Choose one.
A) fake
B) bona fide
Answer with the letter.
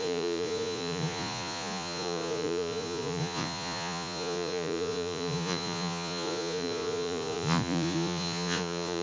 A